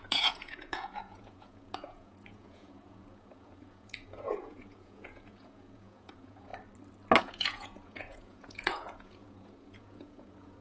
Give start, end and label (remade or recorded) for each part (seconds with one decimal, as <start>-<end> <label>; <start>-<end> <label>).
0.0-6.5 remade; 6.5-7.2 recorded; 7.2-10.6 remade